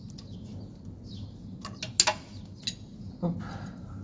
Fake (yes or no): no